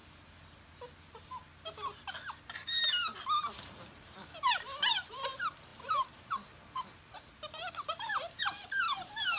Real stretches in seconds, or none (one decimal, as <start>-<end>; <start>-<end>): 0.0-3.6